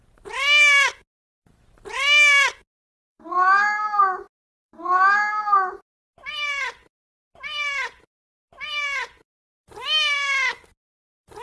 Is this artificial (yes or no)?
no